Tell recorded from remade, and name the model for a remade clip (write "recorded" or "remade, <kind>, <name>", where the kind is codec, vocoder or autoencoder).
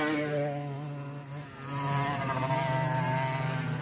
recorded